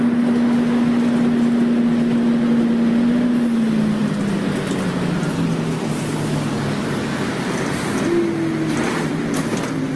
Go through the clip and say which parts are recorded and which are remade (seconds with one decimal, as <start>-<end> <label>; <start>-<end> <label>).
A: 0.0-10.0 recorded